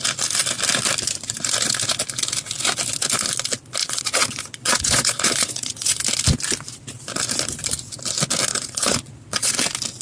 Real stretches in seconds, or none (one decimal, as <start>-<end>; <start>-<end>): 0.0-3.8; 6.0-8.5; 9.5-10.0